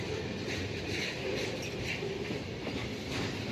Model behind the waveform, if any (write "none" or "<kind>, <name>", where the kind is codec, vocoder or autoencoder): vocoder, BigVGAN v2